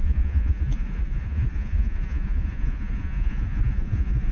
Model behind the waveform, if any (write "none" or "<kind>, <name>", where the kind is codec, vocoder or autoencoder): vocoder, Vocos